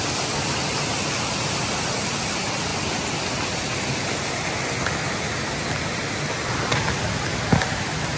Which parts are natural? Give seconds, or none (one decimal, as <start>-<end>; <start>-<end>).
0.0-8.2